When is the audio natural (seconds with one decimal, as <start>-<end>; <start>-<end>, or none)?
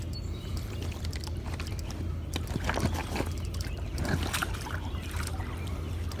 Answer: 0.0-3.0; 4.0-4.4; 5.4-6.2